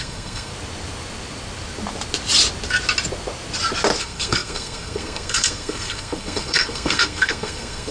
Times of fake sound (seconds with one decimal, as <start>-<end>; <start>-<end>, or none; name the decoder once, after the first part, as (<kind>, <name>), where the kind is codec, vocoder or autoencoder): 0.0-0.5 (codec, SNAC); 4.0-7.9